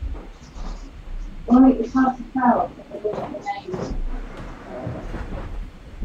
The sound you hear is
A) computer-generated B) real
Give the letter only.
A